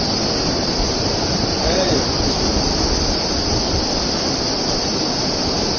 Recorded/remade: recorded